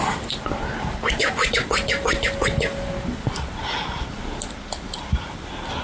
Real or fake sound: real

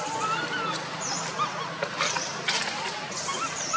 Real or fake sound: real